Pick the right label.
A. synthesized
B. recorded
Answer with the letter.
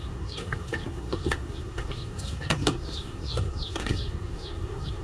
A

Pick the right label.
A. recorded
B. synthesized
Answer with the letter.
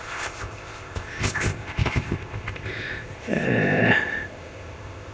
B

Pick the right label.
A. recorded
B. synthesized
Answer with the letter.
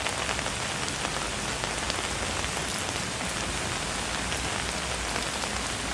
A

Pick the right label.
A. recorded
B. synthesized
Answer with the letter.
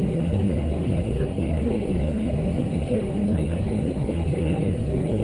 B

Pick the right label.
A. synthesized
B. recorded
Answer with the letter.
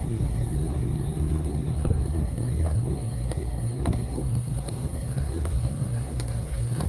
A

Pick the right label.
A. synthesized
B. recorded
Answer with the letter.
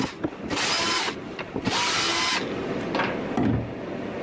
B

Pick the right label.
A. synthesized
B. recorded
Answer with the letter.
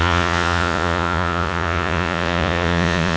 A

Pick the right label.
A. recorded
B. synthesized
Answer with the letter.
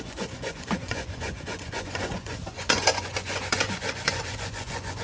B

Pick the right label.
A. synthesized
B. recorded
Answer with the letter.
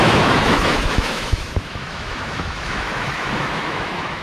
A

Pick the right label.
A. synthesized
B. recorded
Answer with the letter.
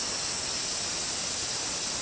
B